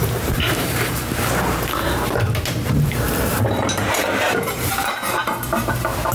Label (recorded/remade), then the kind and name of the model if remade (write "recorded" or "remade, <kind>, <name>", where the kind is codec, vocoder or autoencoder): remade, vocoder, BigVGAN v2